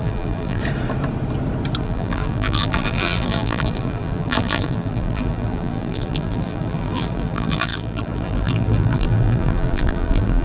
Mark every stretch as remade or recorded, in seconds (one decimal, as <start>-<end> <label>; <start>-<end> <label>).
0.0-0.6 remade; 0.6-1.8 recorded; 1.8-10.4 remade